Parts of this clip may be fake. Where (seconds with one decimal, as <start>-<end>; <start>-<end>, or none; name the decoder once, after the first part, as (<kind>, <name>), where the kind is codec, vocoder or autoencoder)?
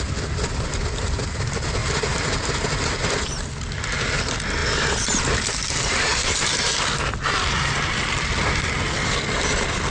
1.8-2.6 (vocoder, BigVGAN v2); 4.6-6.4